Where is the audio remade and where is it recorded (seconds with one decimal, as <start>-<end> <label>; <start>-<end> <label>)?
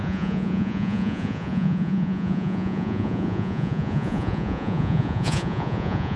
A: 0.0-6.2 remade